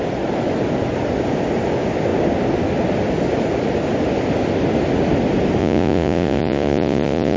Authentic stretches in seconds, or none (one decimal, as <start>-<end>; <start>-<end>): 0.0-5.6